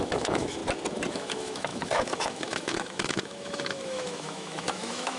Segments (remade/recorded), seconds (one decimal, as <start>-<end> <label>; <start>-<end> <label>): 0.0-0.6 remade; 0.6-1.1 recorded; 1.1-5.2 remade